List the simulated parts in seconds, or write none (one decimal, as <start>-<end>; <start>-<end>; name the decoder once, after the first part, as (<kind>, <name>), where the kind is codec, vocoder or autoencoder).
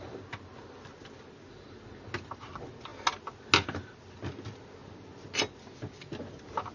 none